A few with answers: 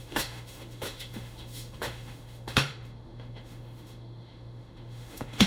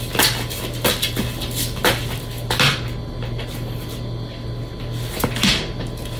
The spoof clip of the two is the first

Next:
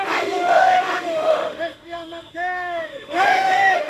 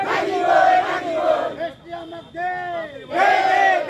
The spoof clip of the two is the first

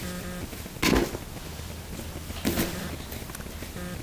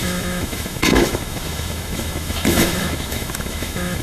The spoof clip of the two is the second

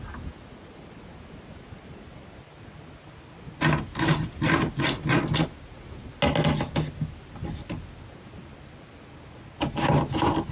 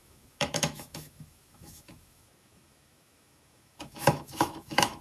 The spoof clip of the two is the second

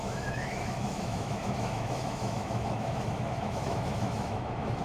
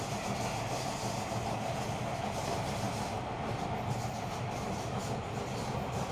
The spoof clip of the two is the first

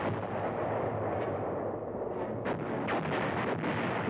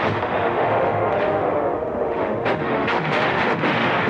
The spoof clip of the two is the second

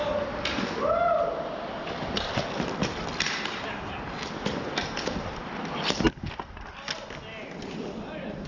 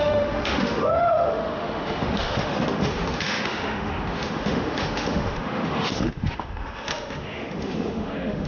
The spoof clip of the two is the second